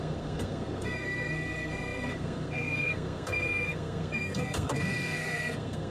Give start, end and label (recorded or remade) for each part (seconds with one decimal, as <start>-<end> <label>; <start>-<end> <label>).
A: 0.0-5.9 remade